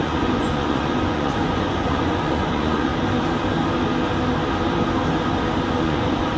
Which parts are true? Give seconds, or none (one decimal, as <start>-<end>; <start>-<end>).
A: 2.9-5.7